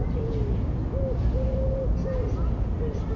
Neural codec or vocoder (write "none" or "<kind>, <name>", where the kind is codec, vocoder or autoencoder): none